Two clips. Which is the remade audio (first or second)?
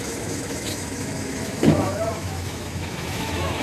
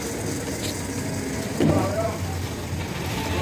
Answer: first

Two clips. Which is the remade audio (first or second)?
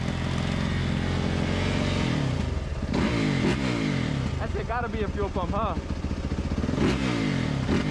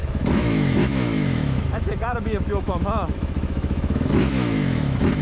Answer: second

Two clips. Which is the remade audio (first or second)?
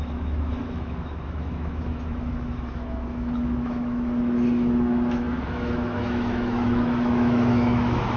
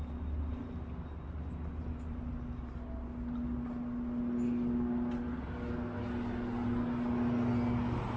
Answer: first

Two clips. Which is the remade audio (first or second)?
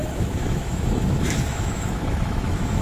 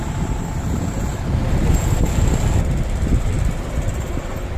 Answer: first